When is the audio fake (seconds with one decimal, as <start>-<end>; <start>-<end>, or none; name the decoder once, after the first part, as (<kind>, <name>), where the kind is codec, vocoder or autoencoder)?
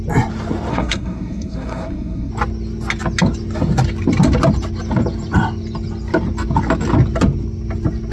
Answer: 0.7-2.3 (codec, SNAC)